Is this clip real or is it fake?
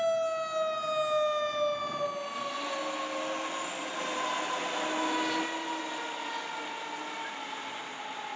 real